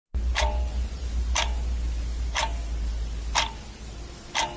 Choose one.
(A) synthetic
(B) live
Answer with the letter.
B